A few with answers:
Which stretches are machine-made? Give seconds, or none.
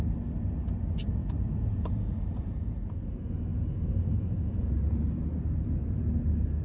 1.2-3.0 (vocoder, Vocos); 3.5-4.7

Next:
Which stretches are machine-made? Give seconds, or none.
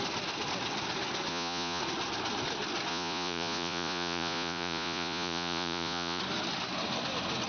1.3-1.8 (vocoder, Vocos); 2.9-6.2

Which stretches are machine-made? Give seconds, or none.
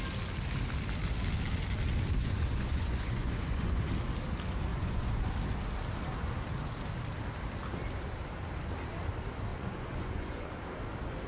2.2-3.9 (vocoder, Vocos); 4.7-5.3; 9.5-10.6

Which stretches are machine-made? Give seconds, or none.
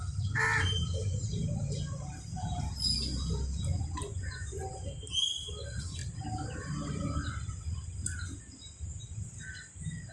none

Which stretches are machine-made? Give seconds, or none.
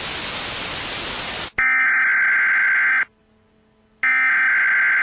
none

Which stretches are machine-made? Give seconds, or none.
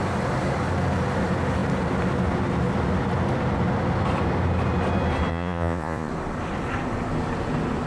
5.3-6.1 (vocoder, Vocos)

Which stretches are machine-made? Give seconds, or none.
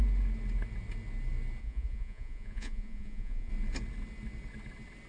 1.6-3.5 (vocoder, Vocos)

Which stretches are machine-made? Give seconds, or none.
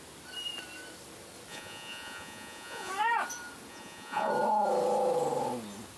1.5-2.9 (vocoder, Vocos); 3.7-4.3